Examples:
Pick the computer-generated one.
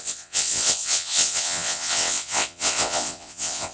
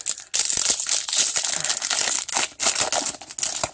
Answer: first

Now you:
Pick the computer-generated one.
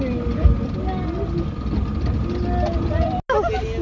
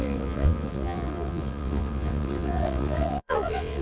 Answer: second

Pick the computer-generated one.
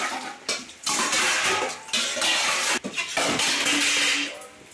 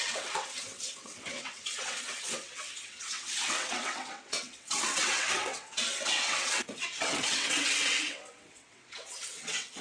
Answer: second